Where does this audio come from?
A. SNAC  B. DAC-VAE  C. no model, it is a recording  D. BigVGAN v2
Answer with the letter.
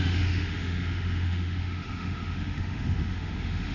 B